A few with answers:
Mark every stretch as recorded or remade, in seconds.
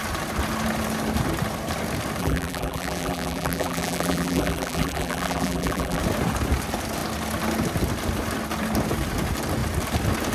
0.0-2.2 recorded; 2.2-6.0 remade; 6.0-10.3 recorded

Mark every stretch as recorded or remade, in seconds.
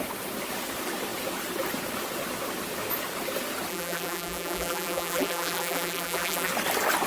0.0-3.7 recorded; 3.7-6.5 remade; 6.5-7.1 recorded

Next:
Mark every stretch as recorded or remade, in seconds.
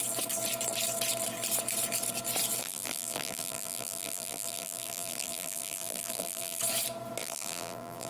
0.0-2.6 recorded; 2.6-6.6 remade; 6.6-7.2 recorded; 7.2-8.1 remade